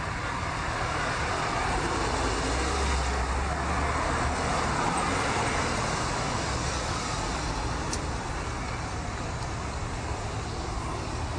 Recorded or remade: recorded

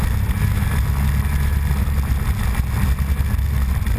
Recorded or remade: recorded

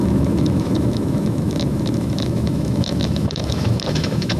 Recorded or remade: remade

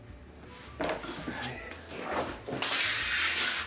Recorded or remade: recorded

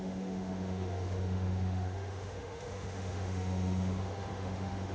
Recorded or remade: remade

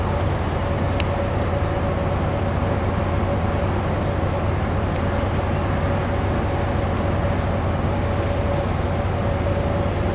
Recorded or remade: recorded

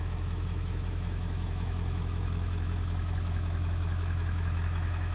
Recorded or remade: remade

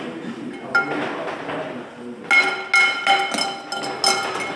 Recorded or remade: recorded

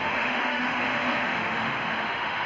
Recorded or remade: remade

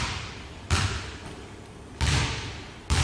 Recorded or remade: recorded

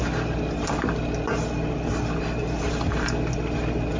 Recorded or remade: recorded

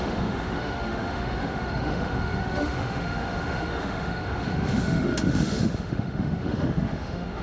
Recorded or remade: remade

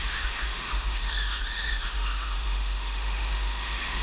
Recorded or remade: remade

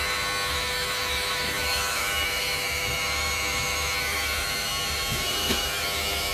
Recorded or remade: remade